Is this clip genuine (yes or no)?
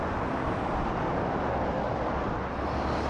yes